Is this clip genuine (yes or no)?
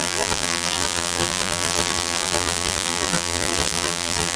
no